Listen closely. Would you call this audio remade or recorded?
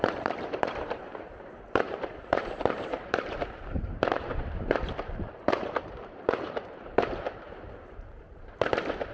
remade